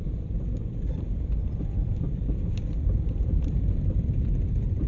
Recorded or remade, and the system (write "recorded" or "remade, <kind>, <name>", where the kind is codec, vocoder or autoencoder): remade, vocoder, BigVGAN v2